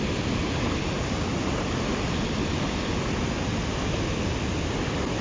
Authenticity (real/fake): real